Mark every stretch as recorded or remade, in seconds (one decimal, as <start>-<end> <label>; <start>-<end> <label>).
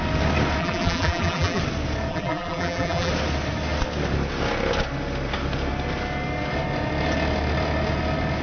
0.0-0.6 recorded; 0.6-1.6 remade; 1.6-2.1 recorded; 2.1-3.1 remade; 3.1-8.4 recorded